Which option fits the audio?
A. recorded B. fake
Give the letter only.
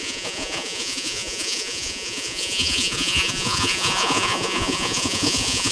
B